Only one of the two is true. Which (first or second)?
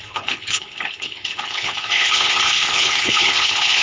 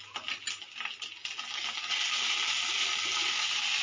second